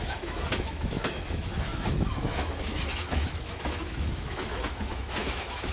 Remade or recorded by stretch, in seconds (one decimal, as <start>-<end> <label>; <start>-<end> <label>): 0.0-5.7 remade